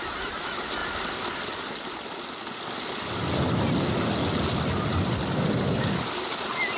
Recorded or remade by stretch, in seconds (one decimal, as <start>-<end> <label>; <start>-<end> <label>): 0.0-6.8 recorded